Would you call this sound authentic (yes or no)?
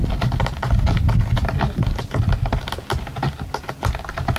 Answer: yes